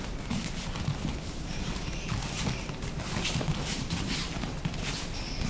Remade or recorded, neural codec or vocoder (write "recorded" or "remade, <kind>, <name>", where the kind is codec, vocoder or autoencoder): recorded